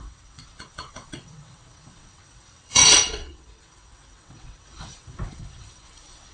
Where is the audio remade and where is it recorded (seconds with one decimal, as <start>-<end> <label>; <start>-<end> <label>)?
0.0-6.3 remade